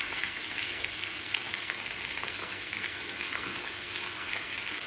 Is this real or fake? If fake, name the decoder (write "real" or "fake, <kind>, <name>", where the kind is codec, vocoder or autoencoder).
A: fake, codec, SNAC